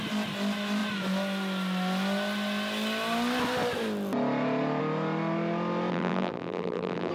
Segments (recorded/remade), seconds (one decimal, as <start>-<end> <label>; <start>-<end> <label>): 0.0-5.9 recorded; 5.9-7.1 remade